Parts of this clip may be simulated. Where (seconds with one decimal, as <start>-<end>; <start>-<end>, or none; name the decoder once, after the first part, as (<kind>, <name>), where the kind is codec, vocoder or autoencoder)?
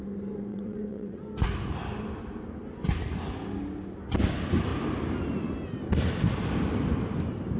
0.5-1.2 (vocoder, WaveNeXt)